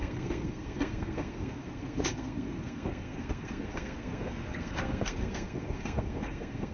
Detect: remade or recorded remade